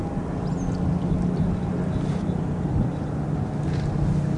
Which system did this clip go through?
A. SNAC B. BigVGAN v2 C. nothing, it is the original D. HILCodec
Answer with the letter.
C